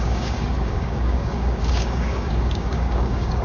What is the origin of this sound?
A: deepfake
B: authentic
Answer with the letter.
A